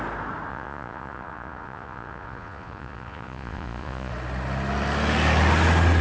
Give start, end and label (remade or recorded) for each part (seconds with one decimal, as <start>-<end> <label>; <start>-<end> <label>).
0.0-0.5 recorded; 0.5-4.1 remade; 4.1-6.0 recorded